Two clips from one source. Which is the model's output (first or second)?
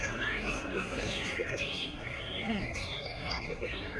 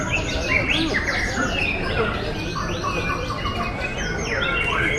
first